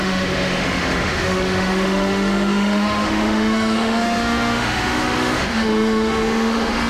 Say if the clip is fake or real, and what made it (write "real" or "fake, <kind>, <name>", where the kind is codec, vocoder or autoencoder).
fake, autoencoder, DAC-VAE